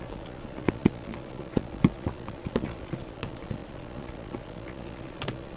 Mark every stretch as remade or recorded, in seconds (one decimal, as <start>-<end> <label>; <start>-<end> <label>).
0.0-5.6 remade

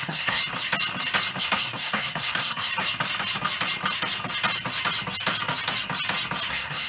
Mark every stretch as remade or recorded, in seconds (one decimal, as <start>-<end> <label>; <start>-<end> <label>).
0.0-0.4 remade; 0.4-1.4 recorded; 1.4-2.7 remade; 2.7-6.5 recorded; 6.5-6.9 remade

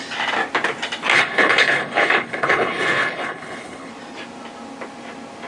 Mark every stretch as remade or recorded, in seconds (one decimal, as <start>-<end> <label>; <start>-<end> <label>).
0.0-1.1 recorded; 1.1-3.9 remade; 3.9-5.5 recorded

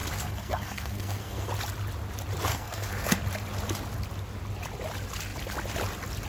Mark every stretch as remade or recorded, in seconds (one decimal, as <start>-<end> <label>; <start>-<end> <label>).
0.0-1.5 remade; 1.5-2.5 recorded; 2.5-3.2 remade; 3.2-6.3 recorded

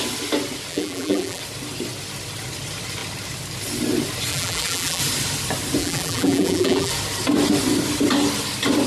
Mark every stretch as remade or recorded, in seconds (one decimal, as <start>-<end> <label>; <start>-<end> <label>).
0.0-0.7 recorded; 0.7-1.4 remade; 1.4-4.3 recorded; 4.3-5.0 remade; 5.0-5.8 recorded; 5.8-6.9 remade; 6.9-8.9 recorded

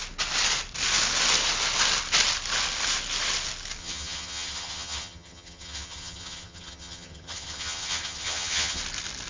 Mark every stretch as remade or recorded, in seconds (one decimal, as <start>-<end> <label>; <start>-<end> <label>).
0.0-3.8 recorded; 3.8-8.8 remade; 8.8-9.3 recorded

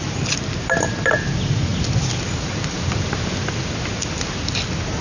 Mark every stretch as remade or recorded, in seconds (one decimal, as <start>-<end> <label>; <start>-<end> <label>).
0.0-5.0 recorded